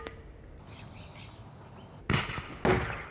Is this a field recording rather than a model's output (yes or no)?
yes